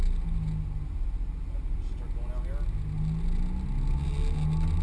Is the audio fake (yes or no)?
no